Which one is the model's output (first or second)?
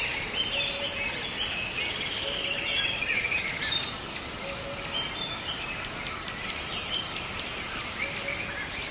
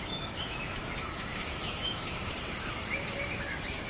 second